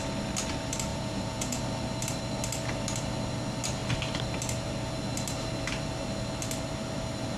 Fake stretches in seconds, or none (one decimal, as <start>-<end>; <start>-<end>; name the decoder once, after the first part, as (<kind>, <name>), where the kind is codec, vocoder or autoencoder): 0.9-1.6 (vocoder, Vocos)